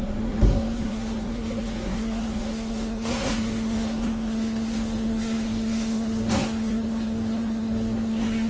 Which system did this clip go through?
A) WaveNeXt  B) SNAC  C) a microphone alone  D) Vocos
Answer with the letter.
B